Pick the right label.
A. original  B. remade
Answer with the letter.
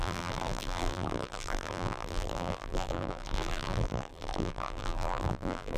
B